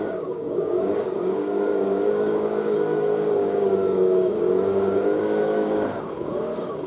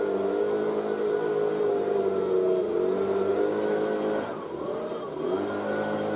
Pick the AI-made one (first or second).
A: first